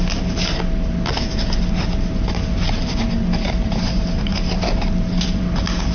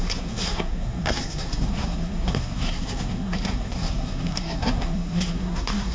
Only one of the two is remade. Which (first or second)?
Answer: second